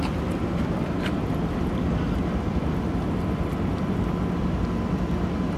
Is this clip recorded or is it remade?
recorded